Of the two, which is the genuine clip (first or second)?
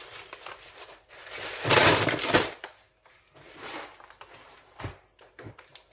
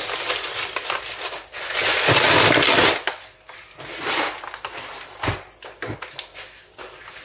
second